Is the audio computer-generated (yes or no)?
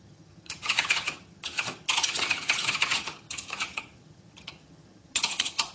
yes